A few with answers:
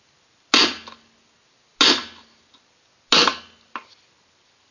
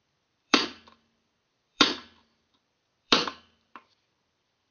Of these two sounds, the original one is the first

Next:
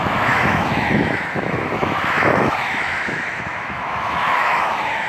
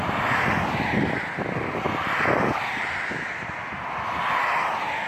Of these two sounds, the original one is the second